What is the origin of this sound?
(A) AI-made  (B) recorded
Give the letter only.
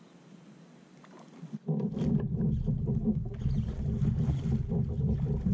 B